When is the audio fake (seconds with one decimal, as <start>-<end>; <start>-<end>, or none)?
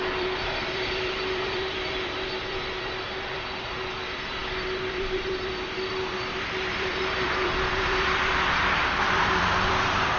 0.0-10.2